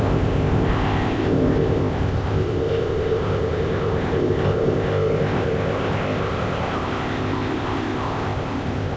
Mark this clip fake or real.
fake